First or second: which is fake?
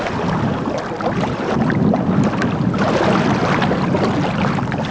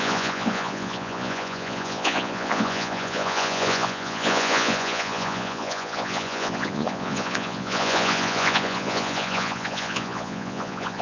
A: second